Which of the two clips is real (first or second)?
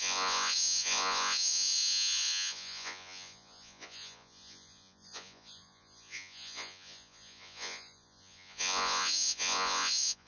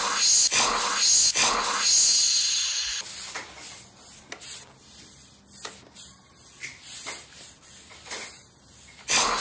second